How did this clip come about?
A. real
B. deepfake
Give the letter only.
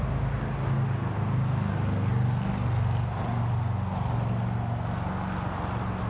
A